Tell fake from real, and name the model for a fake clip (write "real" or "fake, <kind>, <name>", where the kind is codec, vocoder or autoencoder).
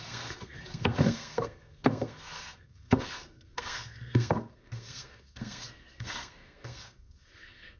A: fake, codec, SNAC